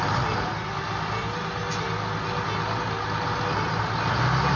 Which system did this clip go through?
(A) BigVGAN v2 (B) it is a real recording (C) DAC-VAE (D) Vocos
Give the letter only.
B